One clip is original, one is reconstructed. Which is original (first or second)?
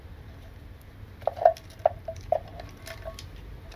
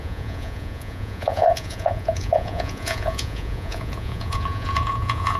first